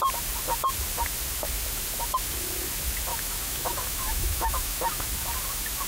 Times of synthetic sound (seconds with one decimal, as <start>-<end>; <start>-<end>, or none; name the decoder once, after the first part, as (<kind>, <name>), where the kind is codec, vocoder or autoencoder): 3.1-5.1 (autoencoder, DAC-VAE)